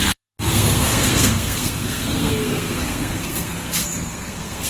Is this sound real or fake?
fake